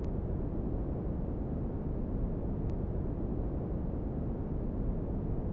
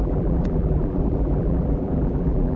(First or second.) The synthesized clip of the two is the second